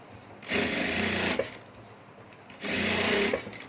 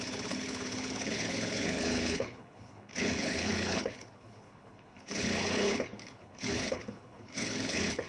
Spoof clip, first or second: second